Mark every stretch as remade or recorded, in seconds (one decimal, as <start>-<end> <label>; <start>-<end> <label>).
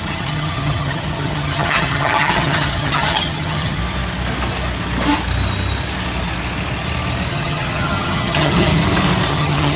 0.0-3.8 remade; 3.8-7.3 recorded; 7.3-8.7 remade; 8.7-9.3 recorded; 9.3-9.8 remade